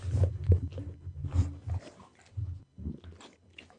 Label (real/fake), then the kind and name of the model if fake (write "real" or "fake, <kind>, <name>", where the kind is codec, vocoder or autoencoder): real